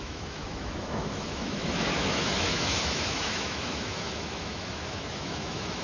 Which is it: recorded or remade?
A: remade